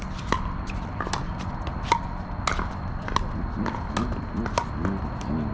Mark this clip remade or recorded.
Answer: recorded